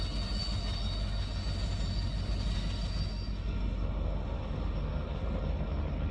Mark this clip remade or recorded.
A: recorded